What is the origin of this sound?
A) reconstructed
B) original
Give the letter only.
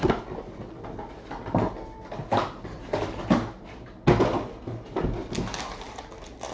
B